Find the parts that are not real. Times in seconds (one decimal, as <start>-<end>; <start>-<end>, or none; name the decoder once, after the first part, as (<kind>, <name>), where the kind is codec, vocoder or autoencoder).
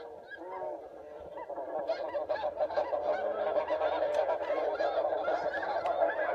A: none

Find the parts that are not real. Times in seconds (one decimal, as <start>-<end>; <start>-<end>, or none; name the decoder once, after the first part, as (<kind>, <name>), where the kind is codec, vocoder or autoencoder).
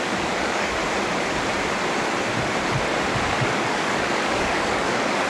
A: 0.0-0.8 (codec, DAC); 3.3-5.3